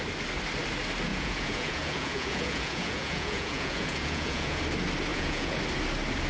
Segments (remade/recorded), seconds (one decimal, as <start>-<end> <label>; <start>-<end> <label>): 0.0-1.1 recorded; 1.1-4.6 remade; 4.6-5.1 recorded; 5.1-5.6 remade; 5.6-6.3 recorded